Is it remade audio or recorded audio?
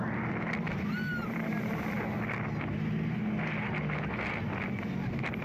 recorded